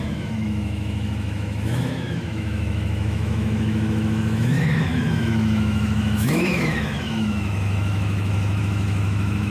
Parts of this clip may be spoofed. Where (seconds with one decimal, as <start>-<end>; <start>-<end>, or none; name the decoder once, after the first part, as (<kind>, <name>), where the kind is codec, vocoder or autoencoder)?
0.0-9.5 (autoencoder, DAC-VAE)